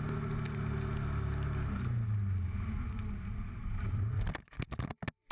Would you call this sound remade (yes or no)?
no